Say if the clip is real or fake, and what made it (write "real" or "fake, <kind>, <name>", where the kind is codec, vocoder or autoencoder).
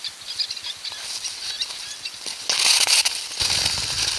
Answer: real